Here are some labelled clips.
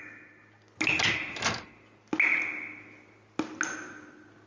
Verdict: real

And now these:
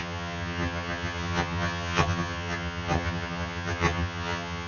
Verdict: fake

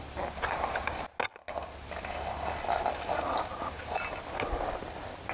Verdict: real